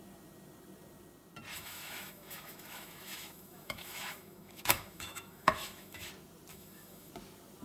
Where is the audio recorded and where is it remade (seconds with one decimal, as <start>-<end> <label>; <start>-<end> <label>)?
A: 0.0-1.5 recorded; 1.5-6.1 remade; 6.1-6.5 recorded; 6.5-7.1 remade; 7.1-7.6 recorded